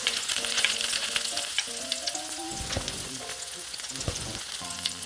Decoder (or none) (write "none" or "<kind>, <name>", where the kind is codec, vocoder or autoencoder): vocoder, Vocos